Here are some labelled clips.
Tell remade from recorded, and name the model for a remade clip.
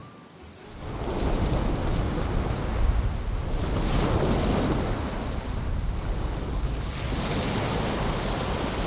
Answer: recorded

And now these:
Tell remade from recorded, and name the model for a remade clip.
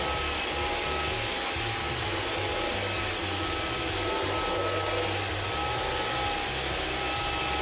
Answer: recorded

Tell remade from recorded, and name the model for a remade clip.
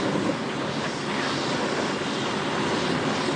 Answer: recorded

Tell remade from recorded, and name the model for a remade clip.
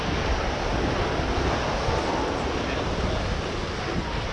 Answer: recorded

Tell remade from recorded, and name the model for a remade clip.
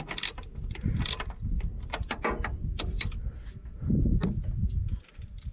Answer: recorded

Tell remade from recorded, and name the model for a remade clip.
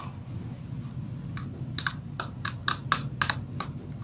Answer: recorded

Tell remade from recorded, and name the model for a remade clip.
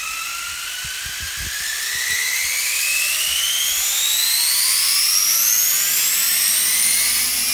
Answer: recorded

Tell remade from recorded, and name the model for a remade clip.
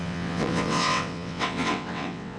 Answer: remade, vocoder, WaveNeXt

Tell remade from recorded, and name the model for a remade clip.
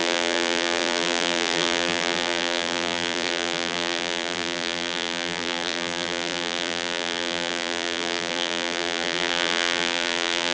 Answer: remade, vocoder, BigVGAN v2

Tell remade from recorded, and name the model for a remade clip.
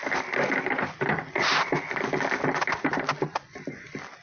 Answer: recorded